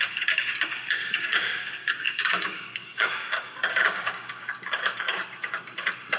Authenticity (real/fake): fake